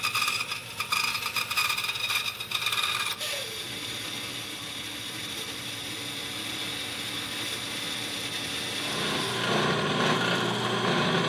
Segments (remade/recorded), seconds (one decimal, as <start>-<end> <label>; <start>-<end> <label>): 0.0-11.3 recorded